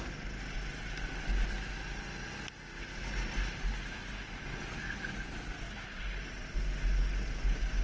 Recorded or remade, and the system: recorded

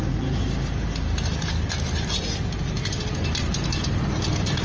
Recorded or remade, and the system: recorded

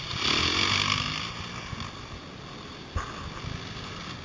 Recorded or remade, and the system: recorded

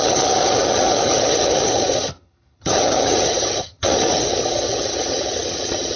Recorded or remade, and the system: remade, vocoder, HiFi-GAN